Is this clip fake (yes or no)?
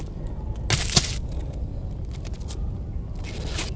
no